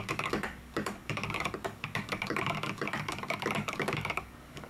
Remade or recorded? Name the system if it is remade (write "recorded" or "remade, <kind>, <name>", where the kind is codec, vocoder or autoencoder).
remade, codec, DAC